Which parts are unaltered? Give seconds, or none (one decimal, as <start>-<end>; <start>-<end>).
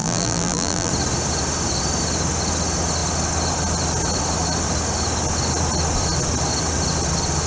0.9-7.5